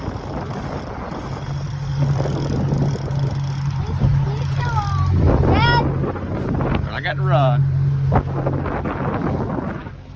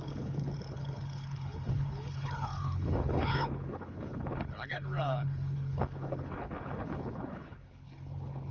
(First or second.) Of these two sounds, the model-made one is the second